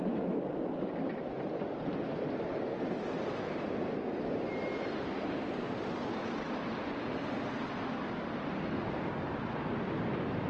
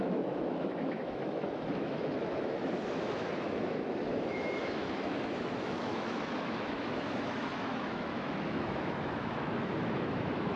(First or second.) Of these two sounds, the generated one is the second